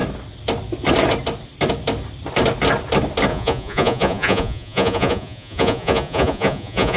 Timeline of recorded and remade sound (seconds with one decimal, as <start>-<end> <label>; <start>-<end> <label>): 0.0-3.3 recorded; 3.3-7.0 remade